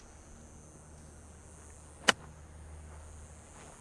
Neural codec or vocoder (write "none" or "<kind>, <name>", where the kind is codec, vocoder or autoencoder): none